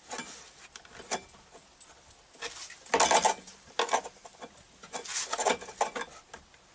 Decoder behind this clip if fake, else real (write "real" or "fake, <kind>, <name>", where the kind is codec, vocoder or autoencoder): real